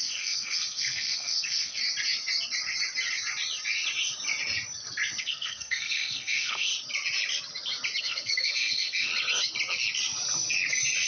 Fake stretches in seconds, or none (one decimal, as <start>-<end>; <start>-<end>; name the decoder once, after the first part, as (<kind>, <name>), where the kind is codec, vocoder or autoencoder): 0.0-1.8 (codec, SNAC); 5.2-6.7; 8.0-9.1